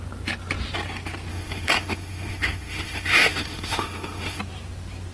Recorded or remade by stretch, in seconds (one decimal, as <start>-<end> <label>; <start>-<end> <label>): 0.0-1.3 recorded; 1.3-4.4 remade; 4.4-5.1 recorded